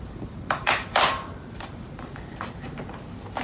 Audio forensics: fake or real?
fake